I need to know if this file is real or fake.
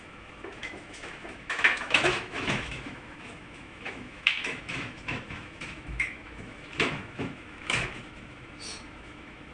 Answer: fake